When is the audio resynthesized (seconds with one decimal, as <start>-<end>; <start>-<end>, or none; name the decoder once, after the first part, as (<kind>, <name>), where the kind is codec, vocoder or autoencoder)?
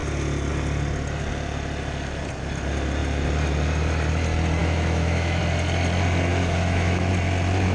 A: 4.6-5.4 (autoencoder, DAC-VAE); 6.3-7.1